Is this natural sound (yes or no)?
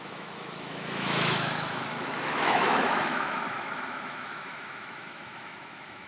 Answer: no